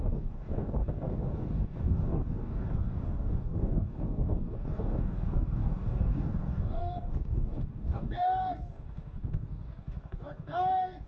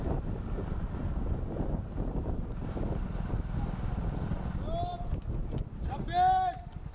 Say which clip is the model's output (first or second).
first